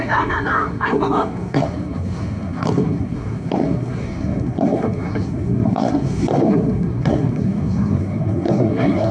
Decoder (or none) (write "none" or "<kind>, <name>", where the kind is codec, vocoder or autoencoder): codec, SNAC